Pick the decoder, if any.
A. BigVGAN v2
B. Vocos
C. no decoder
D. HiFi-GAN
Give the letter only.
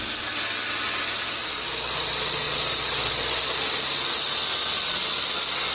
C